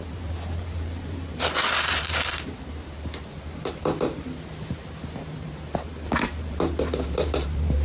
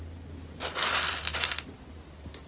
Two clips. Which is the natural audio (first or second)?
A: second